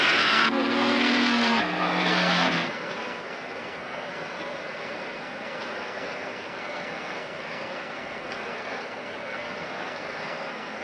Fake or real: fake